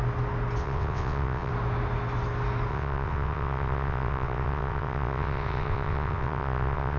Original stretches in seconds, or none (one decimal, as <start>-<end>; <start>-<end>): 0.0-0.6; 1.5-2.7